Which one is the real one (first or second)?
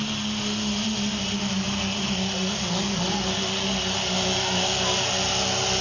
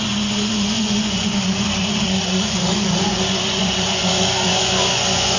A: first